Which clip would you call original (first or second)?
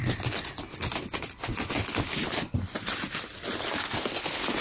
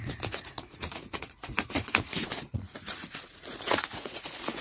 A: first